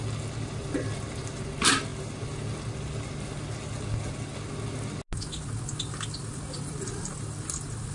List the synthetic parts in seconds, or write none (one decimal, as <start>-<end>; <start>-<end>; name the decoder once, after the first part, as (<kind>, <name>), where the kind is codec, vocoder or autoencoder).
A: none